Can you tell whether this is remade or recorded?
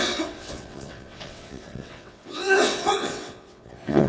remade